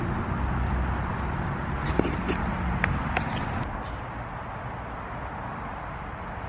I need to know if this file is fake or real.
real